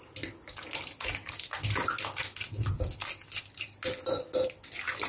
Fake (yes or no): no